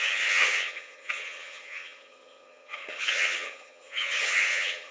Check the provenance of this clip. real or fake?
fake